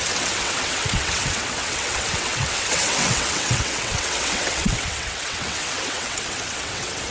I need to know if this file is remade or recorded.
remade